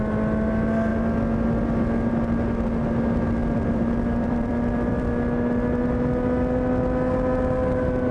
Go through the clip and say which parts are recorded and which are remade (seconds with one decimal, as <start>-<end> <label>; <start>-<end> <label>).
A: 0.0-3.4 recorded; 3.4-5.1 remade; 5.1-8.1 recorded